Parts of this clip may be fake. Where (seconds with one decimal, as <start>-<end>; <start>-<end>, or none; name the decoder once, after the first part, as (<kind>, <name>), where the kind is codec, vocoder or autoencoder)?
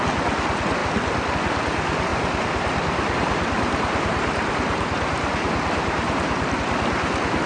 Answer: 2.1-6.6 (vocoder, BigVGAN v2)